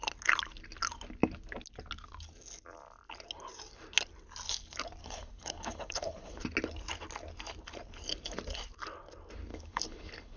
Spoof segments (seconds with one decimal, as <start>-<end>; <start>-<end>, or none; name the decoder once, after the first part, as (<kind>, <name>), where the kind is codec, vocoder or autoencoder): 5.0-6.4 (codec, HILCodec); 9.5-10.4